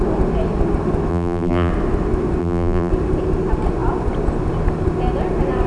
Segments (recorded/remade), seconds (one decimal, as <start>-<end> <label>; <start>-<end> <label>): 0.0-1.1 recorded; 1.1-1.7 remade; 1.7-2.4 recorded; 2.4-2.9 remade; 2.9-5.7 recorded